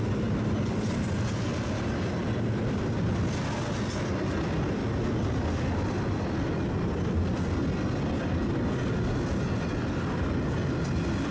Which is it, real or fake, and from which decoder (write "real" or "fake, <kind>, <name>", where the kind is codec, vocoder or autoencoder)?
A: real